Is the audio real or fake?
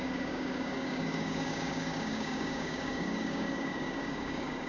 fake